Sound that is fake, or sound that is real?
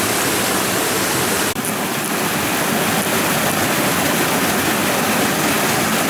real